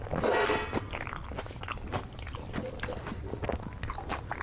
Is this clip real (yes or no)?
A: yes